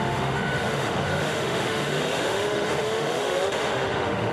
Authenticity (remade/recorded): remade